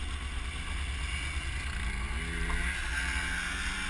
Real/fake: real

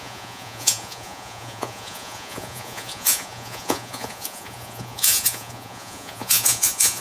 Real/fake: fake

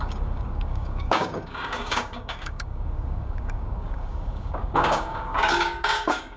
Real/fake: fake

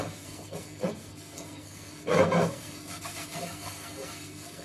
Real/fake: fake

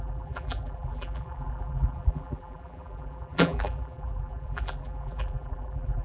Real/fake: fake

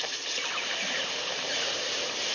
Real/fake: fake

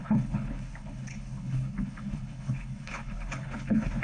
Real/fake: fake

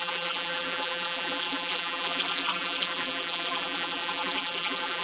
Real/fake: fake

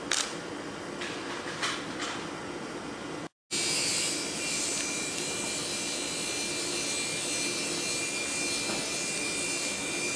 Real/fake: real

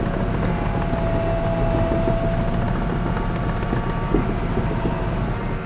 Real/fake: real